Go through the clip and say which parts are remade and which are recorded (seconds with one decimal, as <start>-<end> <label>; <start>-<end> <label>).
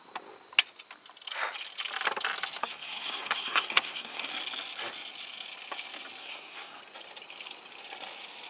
0.0-2.6 recorded; 2.6-4.3 remade; 4.3-6.2 recorded; 6.2-6.8 remade; 6.8-8.5 recorded